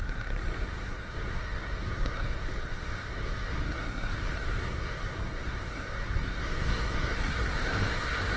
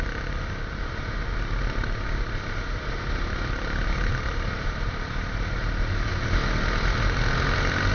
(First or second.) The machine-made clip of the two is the first